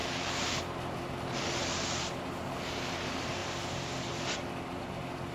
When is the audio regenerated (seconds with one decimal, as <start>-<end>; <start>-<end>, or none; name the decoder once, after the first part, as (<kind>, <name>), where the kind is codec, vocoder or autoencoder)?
0.0-5.3 (vocoder, BigVGAN v2)